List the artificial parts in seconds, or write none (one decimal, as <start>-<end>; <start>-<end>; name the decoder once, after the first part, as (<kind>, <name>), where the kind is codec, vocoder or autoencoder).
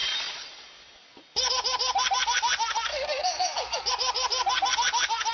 2.9-3.9 (codec, DAC)